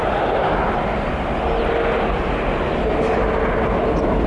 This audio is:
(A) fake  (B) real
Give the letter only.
B